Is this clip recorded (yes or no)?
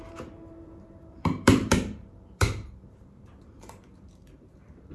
no